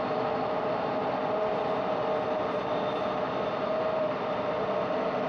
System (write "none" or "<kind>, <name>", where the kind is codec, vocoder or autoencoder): none